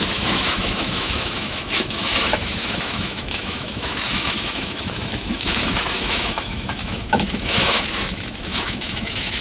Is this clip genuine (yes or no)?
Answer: no